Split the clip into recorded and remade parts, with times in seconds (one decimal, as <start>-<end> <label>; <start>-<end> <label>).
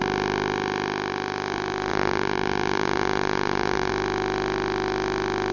0.0-1.9 recorded; 1.9-3.9 remade; 3.9-5.5 recorded